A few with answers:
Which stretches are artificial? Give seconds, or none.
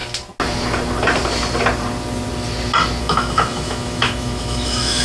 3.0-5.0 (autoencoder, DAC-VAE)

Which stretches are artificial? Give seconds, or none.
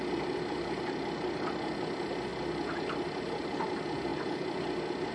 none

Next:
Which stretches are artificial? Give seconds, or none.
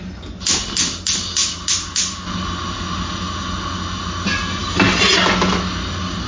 none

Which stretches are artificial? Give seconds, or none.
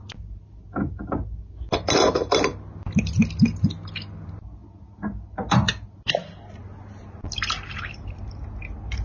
none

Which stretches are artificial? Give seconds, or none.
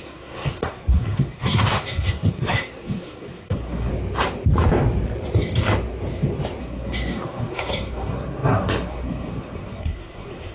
0.0-3.9 (codec, SNAC); 6.6-10.5